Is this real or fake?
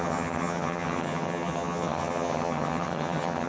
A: fake